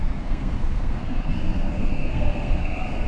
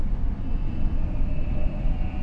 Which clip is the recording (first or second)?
second